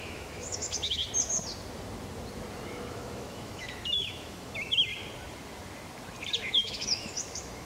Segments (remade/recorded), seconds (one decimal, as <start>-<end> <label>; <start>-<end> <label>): 0.0-1.0 remade; 1.0-2.9 recorded; 2.9-4.9 remade; 4.9-6.4 recorded; 6.4-7.7 remade